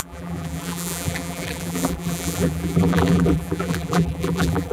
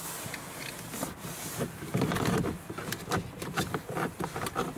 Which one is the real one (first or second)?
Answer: second